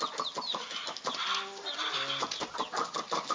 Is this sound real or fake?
real